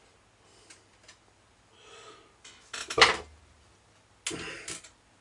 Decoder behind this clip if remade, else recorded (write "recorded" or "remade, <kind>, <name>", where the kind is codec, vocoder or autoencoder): recorded